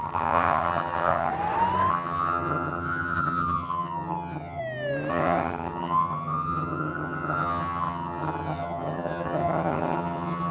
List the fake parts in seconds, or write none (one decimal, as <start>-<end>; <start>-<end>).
0.0-1.3; 1.9-4.6; 5.1-10.5